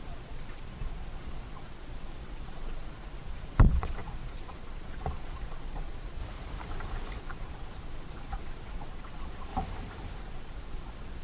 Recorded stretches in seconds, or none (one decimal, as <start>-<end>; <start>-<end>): 6.2-7.2; 9.5-10.2